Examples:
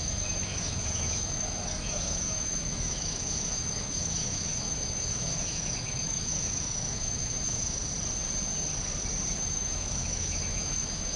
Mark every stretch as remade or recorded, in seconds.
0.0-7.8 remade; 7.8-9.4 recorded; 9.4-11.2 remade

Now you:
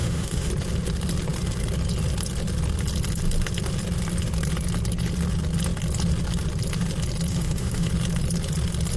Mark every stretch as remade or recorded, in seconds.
0.0-0.5 remade; 0.5-7.3 recorded; 7.3-7.9 remade; 7.9-9.0 recorded

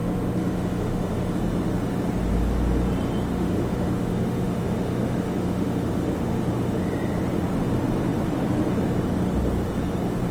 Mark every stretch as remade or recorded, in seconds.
0.0-1.3 remade; 1.3-3.3 recorded; 3.3-6.8 remade; 6.8-10.3 recorded

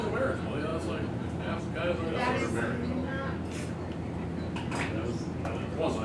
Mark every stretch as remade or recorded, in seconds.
0.0-6.0 recorded

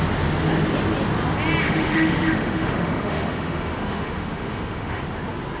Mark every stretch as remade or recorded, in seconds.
0.0-1.6 recorded; 1.6-5.0 remade; 5.0-5.6 recorded

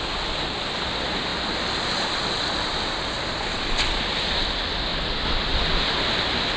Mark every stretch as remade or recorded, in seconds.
0.0-6.6 recorded

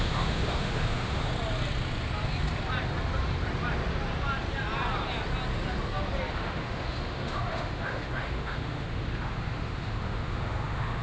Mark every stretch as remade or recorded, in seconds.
0.0-1.3 remade; 1.3-6.3 recorded; 6.3-11.0 remade